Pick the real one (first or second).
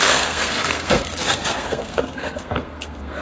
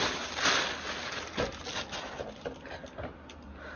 second